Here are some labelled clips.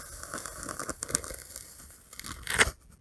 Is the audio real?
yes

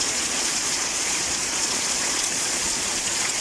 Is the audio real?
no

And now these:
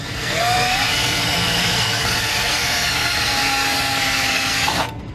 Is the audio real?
no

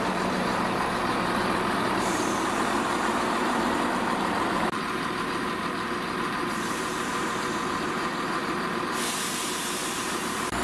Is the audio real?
no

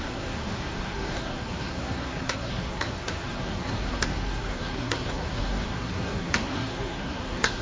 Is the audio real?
no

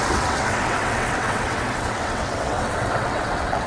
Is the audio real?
no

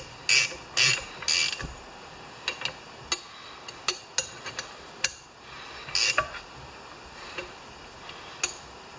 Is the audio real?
yes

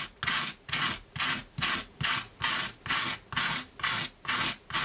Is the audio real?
yes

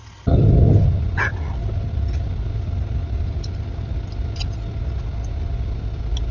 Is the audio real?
yes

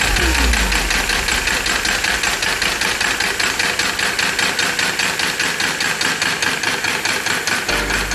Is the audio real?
yes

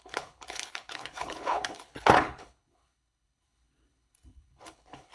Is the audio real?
no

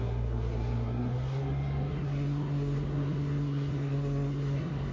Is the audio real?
no